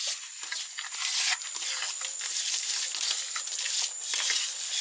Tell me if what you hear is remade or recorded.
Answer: recorded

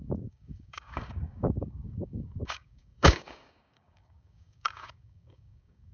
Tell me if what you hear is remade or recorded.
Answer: remade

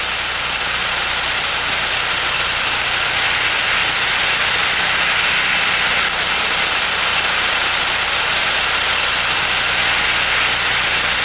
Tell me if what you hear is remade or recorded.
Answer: recorded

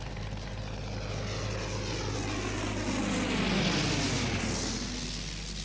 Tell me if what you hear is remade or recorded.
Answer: recorded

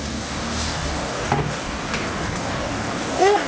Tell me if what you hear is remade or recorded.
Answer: remade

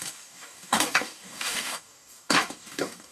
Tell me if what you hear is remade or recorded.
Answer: remade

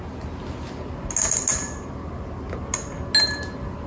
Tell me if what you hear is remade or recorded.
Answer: recorded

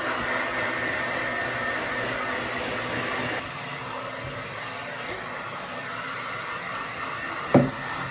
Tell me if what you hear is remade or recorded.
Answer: recorded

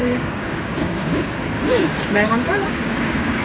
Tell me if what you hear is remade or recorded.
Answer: remade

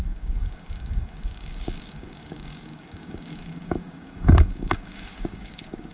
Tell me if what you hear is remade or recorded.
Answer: remade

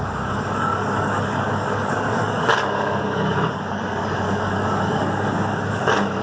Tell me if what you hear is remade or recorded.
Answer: remade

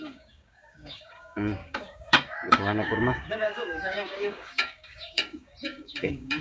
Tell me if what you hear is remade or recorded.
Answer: remade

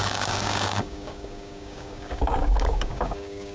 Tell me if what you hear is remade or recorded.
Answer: remade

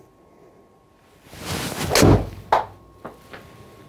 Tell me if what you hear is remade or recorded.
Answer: recorded